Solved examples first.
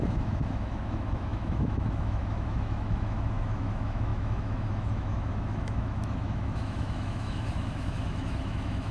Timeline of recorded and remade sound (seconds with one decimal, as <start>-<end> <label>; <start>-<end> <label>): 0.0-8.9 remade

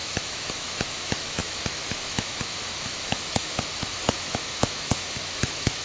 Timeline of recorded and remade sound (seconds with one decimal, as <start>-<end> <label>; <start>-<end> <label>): 0.0-5.8 remade

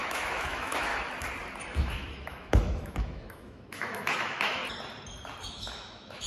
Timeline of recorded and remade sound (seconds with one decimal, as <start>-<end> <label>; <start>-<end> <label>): 0.0-0.9 remade; 0.9-1.6 recorded; 1.6-4.6 remade; 4.6-5.5 recorded; 5.5-6.3 remade

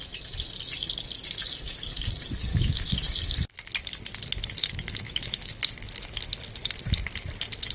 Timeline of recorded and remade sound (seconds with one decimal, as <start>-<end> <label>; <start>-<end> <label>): 0.0-2.5 recorded; 2.5-3.1 remade; 3.1-4.6 recorded; 4.6-5.7 remade; 5.7-7.7 recorded

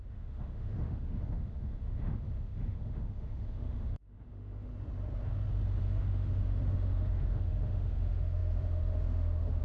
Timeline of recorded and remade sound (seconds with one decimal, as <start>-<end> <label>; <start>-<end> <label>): 0.0-4.7 remade; 4.7-5.8 recorded; 5.8-9.6 remade

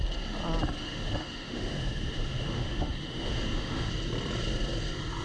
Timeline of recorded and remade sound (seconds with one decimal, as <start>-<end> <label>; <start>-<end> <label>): 0.0-0.8 recorded; 0.8-3.9 remade; 3.9-5.2 recorded